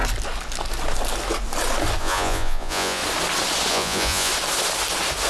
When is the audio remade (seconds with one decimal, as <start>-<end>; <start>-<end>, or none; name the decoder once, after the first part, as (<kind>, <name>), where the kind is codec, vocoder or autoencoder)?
2.0-3.0 (vocoder, Vocos); 3.7-4.3